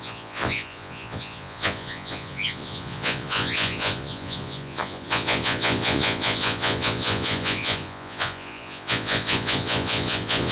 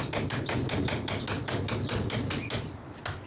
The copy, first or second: first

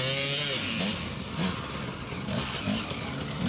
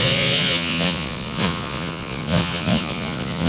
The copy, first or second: second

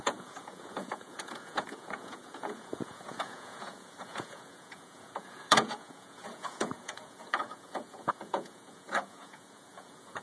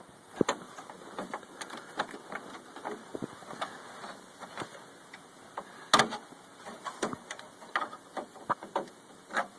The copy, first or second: first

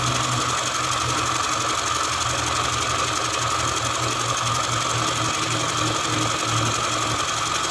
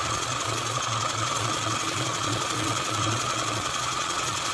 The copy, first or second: second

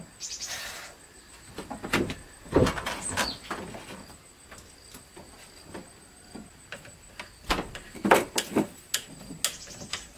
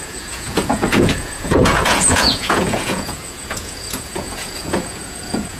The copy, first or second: second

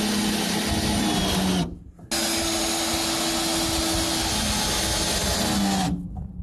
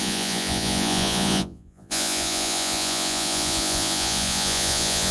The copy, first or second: second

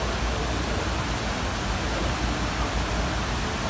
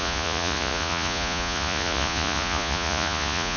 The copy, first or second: second